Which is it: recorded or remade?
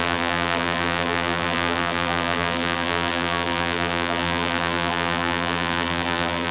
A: remade